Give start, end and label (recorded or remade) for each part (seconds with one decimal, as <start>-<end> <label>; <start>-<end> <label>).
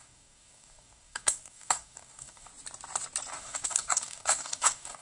0.0-2.5 remade; 2.5-3.4 recorded; 3.4-5.0 remade